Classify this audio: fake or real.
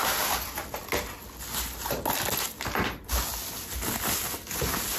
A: real